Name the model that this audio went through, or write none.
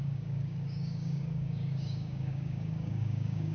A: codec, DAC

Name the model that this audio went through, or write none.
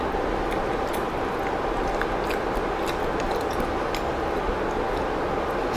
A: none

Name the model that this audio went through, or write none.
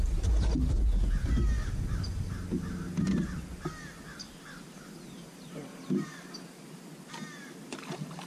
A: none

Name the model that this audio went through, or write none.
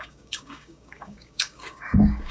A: codec, DAC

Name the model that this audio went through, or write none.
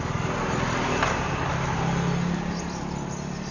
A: none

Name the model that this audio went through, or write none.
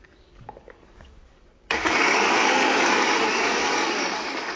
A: codec, DAC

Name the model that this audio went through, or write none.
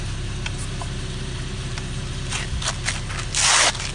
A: none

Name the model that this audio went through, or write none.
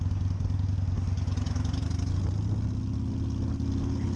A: none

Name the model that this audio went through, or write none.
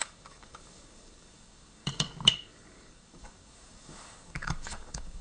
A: codec, DAC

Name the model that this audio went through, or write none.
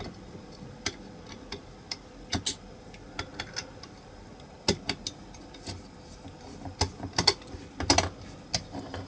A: none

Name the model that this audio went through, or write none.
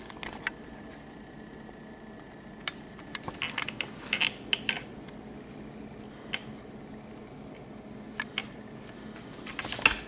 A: none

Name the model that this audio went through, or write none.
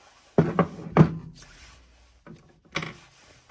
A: none